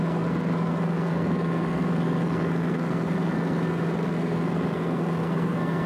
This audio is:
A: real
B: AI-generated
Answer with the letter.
B